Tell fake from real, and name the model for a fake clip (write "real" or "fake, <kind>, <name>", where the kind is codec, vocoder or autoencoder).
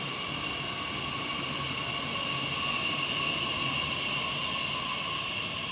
real